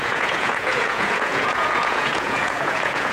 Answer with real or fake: fake